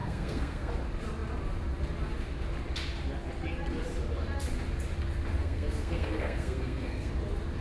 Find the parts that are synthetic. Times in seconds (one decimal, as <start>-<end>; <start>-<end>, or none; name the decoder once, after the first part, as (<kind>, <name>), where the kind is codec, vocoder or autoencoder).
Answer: 0.0-0.7 (codec, SNAC); 5.4-7.1